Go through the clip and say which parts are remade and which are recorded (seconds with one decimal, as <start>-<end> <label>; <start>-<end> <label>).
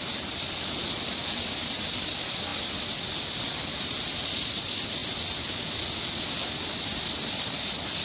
0.0-8.0 recorded